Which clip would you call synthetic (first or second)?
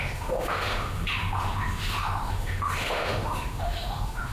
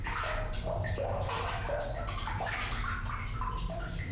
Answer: first